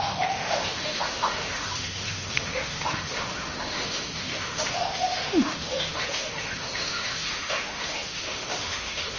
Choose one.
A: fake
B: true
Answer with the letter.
A